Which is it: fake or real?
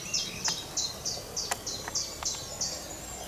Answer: real